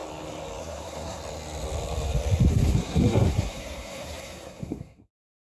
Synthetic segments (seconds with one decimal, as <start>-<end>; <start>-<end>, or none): 0.6-1.2; 2.5-5.4